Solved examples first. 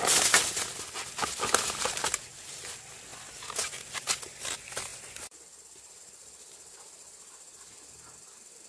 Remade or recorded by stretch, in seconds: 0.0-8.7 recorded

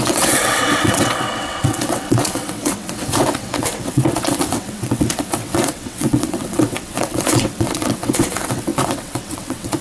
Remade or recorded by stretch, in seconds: 0.0-9.8 remade

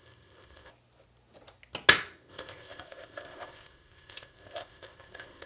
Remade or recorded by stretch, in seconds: 0.0-0.7 remade; 0.7-2.3 recorded; 2.3-5.5 remade

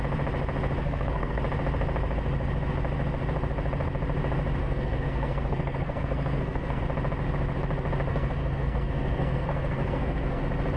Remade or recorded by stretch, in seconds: 0.0-0.8 recorded; 0.8-1.4 remade; 1.4-4.6 recorded; 4.6-6.8 remade; 6.8-8.1 recorded; 8.1-10.4 remade; 10.4-10.8 recorded

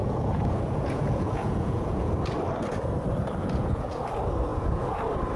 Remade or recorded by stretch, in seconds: 0.0-2.1 remade; 2.1-3.4 recorded; 3.4-4.0 remade; 4.0-4.5 recorded; 4.5-5.0 remade; 5.0-5.4 recorded